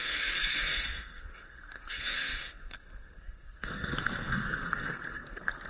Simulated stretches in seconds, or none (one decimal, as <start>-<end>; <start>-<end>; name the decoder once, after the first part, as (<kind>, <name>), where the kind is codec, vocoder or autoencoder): 0.0-5.7 (codec, SNAC)